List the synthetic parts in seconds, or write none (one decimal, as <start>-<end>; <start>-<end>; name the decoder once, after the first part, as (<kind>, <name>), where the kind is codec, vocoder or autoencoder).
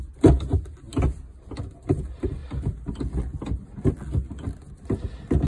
none